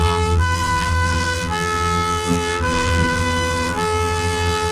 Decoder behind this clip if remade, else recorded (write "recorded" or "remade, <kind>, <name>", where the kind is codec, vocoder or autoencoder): remade, vocoder, BigVGAN v2